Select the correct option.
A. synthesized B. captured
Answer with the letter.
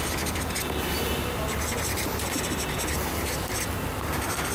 B